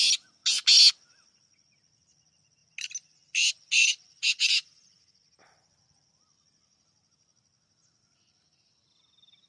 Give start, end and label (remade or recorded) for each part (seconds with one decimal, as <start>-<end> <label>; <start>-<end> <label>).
0.0-9.5 recorded